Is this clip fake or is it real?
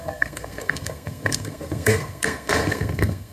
fake